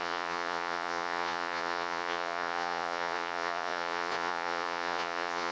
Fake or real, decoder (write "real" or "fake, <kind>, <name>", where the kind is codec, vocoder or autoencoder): fake, vocoder, Vocos